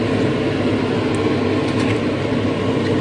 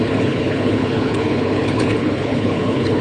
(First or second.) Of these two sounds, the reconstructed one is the second